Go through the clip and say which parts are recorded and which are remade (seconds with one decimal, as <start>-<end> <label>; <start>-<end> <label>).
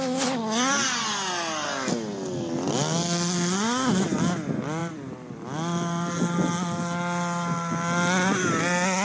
0.0-4.8 recorded; 4.8-6.1 remade; 6.1-9.0 recorded